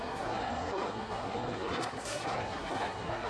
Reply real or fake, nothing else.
fake